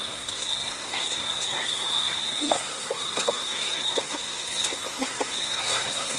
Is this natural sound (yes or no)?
no